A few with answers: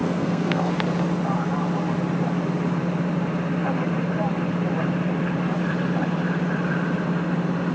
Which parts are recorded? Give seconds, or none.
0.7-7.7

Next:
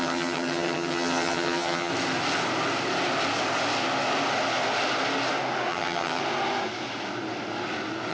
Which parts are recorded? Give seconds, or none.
1.9-5.7; 6.2-8.1

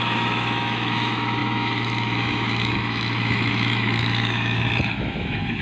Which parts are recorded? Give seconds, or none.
none

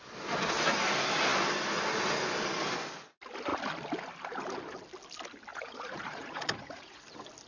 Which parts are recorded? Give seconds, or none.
0.0-5.5; 7.0-7.5

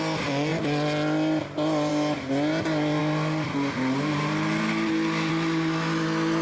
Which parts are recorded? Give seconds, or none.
0.0-6.4

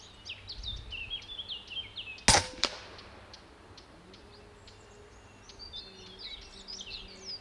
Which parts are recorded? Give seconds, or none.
0.0-7.4

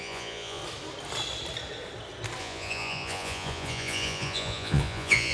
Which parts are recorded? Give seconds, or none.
0.6-2.4

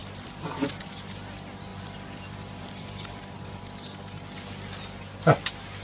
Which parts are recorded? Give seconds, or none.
0.8-1.7; 3.6-5.8